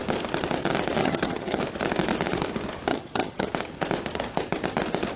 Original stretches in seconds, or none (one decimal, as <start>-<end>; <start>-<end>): 0.0-1.0; 1.6-2.9; 3.5-5.2